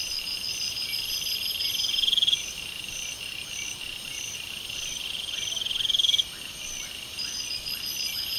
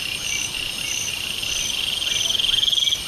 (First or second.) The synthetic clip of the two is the first